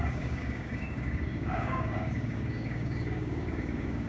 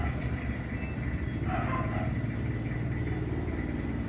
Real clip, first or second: second